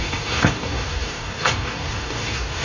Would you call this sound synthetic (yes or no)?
yes